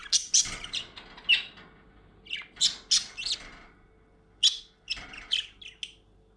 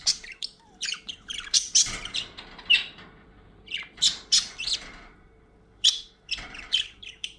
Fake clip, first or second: second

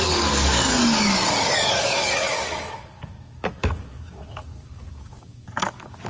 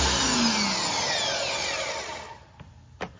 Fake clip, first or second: first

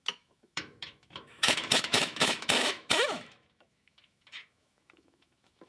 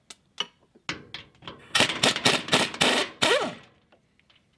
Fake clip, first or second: first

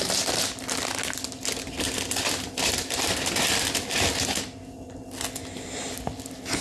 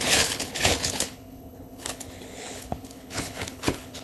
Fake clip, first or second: second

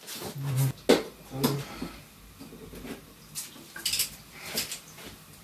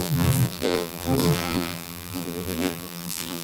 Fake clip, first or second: second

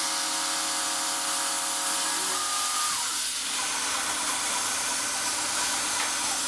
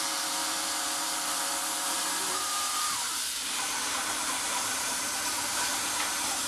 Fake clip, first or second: second